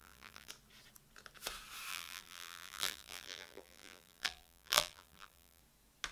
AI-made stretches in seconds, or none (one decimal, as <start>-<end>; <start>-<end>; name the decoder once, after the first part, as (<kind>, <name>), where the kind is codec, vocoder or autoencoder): 0.0-0.5 (vocoder, BigVGAN v2); 1.9-5.6